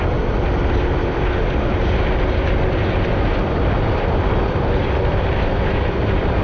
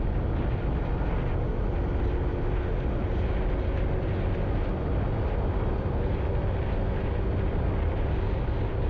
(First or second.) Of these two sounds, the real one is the second